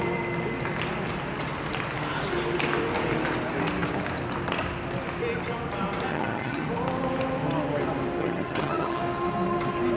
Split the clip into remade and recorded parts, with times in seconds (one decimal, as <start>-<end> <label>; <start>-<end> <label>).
0.0-6.1 recorded; 6.1-6.7 remade; 6.7-8.2 recorded; 8.2-9.0 remade; 9.0-10.0 recorded